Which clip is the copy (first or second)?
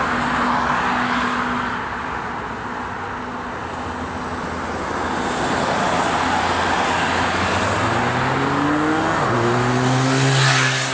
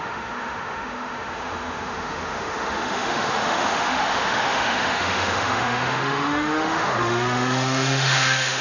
second